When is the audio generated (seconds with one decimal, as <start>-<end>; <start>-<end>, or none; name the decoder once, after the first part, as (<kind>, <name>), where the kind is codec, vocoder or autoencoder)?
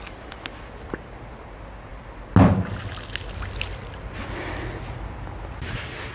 none